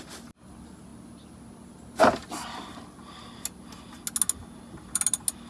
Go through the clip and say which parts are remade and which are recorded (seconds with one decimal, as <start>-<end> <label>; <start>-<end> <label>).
0.0-5.5 recorded